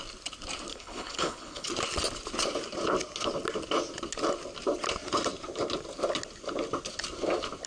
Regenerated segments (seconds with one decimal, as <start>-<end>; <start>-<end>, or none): 0.7-1.7

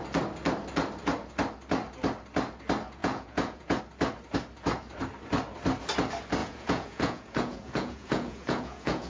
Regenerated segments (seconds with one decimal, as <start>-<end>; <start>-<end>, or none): 3.0-3.8; 6.4-9.1

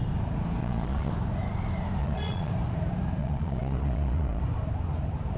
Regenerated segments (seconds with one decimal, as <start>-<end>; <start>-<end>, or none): 0.6-1.1; 2.0-2.5; 3.2-4.4

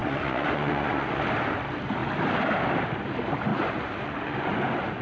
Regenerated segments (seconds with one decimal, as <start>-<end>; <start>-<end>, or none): 0.0-1.2; 3.5-5.0

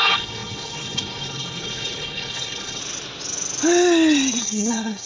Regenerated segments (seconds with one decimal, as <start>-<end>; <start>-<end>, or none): 0.0-2.8; 4.4-5.1

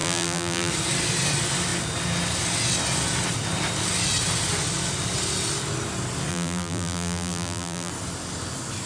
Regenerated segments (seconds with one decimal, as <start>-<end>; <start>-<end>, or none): 0.0-0.7; 6.3-7.9

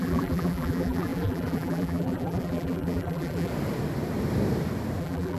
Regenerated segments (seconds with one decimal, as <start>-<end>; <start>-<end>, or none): 0.0-3.5; 5.0-5.4

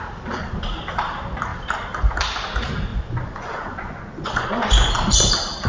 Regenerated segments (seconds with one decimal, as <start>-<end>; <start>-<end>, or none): 2.9-5.3